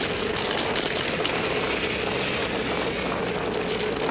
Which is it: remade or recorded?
recorded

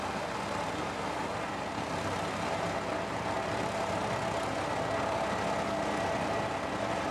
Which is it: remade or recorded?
recorded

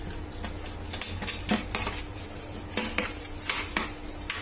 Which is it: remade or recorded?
recorded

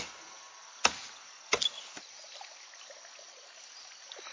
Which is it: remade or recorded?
recorded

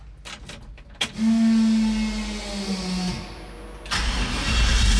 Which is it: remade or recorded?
recorded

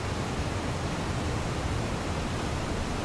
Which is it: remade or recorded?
recorded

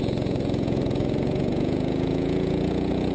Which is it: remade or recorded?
remade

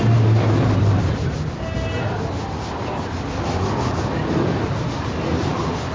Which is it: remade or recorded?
recorded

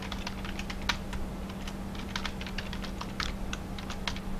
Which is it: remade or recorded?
recorded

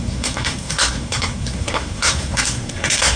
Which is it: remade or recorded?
remade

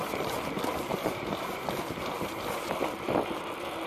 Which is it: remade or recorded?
remade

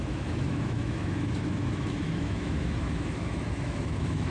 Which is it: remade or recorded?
remade